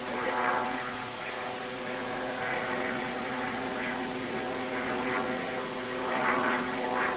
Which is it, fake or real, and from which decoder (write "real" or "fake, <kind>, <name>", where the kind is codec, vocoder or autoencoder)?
fake, vocoder, Vocos